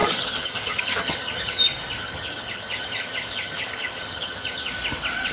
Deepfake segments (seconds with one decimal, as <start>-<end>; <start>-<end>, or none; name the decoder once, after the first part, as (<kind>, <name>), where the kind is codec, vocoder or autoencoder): 0.0-1.6 (vocoder, HiFi-GAN); 2.0-4.7